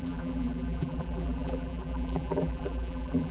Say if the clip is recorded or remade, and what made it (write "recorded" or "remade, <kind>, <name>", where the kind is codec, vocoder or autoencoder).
remade, vocoder, BigVGAN v2